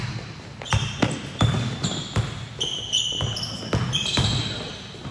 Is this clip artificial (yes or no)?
no